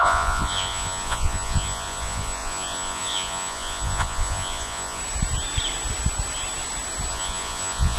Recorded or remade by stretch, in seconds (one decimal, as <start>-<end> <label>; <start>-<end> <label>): 0.0-5.0 remade; 5.0-7.1 recorded; 7.1-8.0 remade